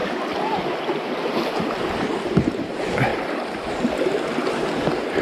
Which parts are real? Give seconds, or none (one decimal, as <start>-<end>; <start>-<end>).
0.0-3.1; 3.9-5.2